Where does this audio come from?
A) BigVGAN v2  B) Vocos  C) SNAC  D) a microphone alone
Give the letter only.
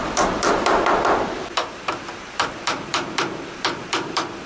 A